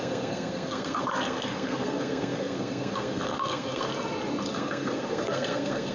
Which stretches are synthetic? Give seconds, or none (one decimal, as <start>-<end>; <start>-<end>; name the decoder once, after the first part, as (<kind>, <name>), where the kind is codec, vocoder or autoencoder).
0.0-3.9 (codec, SNAC); 4.5-5.9

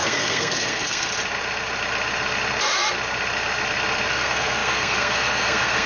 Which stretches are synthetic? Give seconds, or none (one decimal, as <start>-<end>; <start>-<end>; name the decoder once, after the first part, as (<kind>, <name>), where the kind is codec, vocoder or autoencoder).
0.0-1.1 (codec, SNAC); 4.1-5.9